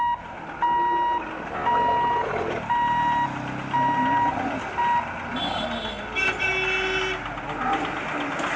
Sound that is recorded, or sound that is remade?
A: recorded